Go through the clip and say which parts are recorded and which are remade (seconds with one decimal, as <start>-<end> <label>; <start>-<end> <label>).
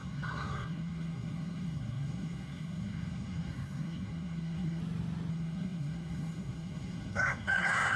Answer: 0.0-4.8 remade; 4.8-5.3 recorded; 5.3-8.0 remade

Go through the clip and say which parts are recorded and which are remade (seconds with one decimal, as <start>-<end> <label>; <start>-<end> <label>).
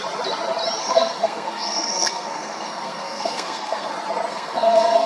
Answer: 0.0-0.8 recorded; 0.8-3.9 remade; 3.9-4.3 recorded; 4.3-5.1 remade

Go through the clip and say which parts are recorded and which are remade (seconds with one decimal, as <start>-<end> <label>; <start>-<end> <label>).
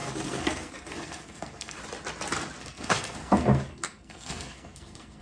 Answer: 0.0-1.8 remade; 1.8-2.6 recorded; 2.6-5.2 remade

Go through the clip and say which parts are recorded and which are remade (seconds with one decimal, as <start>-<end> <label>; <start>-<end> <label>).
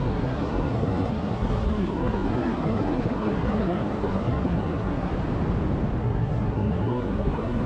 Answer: 0.0-5.1 remade; 5.1-6.0 recorded; 6.0-7.7 remade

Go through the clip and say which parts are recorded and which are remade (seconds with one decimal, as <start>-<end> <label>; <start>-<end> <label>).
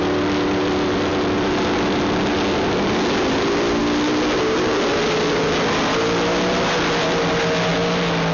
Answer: 0.0-8.3 recorded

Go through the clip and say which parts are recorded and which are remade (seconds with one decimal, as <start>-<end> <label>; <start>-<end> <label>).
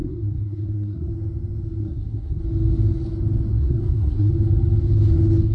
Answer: 0.0-1.1 remade; 1.1-1.8 recorded; 1.8-2.4 remade; 2.4-3.5 recorded; 3.5-4.3 remade; 4.3-5.5 recorded